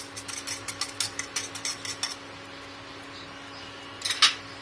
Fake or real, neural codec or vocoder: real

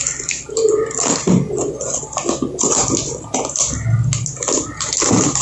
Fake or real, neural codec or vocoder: real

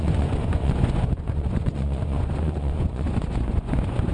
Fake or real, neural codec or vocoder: fake, vocoder, Vocos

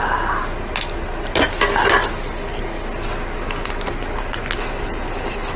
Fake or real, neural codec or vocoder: real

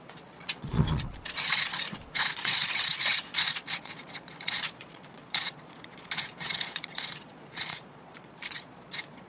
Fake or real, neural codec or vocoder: fake, vocoder, Vocos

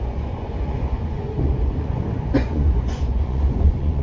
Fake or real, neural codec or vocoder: fake, vocoder, Vocos